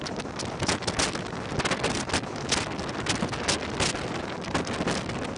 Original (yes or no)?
yes